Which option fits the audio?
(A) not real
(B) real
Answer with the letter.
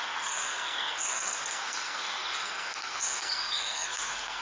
A